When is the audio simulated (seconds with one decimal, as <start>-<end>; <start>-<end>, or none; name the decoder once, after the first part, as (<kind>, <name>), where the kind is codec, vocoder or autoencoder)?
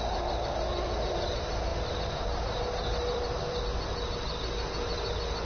1.7-3.6 (vocoder, BigVGAN v2)